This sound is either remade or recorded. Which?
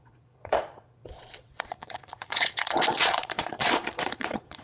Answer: remade